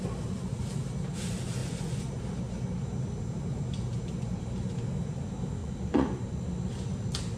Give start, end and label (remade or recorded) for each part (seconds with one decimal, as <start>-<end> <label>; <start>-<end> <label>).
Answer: 0.0-1.6 recorded; 1.6-2.2 remade; 2.2-5.6 recorded; 5.6-6.4 remade; 6.4-7.4 recorded